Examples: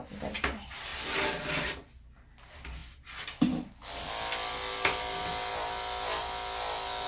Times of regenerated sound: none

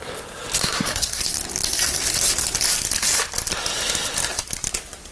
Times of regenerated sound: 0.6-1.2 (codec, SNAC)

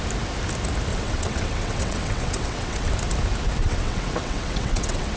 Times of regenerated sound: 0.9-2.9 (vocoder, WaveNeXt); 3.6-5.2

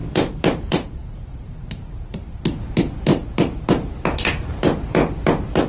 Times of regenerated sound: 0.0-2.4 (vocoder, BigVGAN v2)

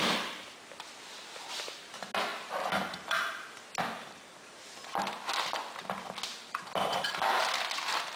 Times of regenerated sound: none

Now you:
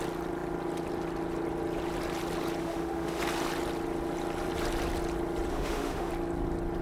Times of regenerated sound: 2.6-3.2 (autoencoder, DAC-VAE); 5.5-6.1